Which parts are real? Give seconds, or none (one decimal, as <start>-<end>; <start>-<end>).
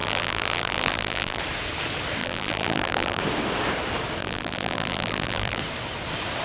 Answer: 1.4-2.2; 3.2-4.2; 5.6-6.4